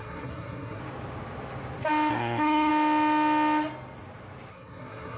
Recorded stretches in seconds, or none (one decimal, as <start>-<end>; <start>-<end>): 0.8-2.1; 2.7-4.5